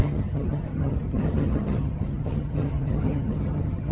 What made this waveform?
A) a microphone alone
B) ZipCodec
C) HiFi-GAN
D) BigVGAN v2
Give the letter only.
C